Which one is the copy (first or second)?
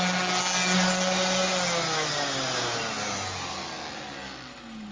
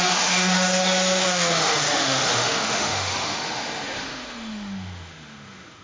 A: second